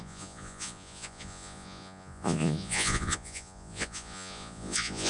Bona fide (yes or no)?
no